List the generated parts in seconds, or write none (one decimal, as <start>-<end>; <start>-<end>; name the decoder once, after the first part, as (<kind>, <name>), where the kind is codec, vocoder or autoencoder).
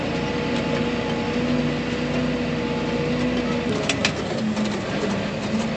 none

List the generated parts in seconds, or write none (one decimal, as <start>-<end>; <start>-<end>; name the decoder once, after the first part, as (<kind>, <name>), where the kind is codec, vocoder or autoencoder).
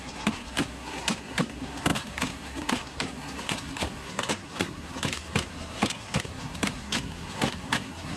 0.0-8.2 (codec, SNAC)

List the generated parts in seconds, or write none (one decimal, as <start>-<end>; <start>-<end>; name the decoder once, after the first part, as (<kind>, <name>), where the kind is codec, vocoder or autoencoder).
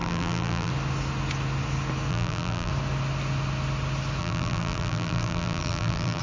0.0-0.7 (vocoder, BigVGAN v2); 2.1-2.7; 4.2-6.2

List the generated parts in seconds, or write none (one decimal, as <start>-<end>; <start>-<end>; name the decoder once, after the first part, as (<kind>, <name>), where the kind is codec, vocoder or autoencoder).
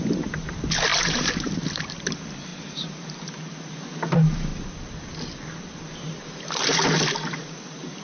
0.9-2.0 (vocoder, BigVGAN v2); 2.5-3.3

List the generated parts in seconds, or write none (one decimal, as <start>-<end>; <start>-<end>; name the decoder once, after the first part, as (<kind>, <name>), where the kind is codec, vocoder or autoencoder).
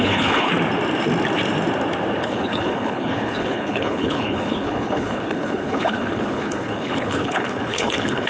0.0-0.5 (codec, HILCodec); 2.2-8.3